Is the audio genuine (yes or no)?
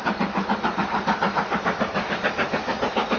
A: yes